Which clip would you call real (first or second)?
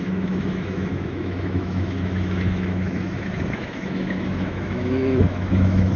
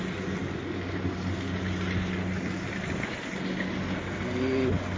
second